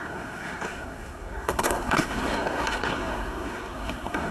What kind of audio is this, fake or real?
fake